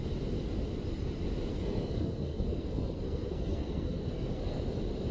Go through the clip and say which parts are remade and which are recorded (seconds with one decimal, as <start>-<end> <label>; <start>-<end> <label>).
0.0-1.5 recorded; 1.5-4.6 remade; 4.6-5.1 recorded